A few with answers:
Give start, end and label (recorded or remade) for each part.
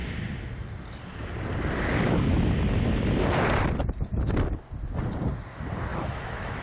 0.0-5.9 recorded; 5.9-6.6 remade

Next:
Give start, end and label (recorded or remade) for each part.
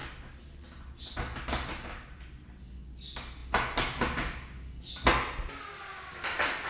0.0-6.7 recorded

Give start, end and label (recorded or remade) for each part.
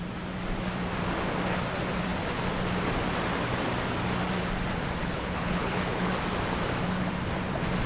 0.0-5.0 recorded; 5.0-6.1 remade; 6.1-7.9 recorded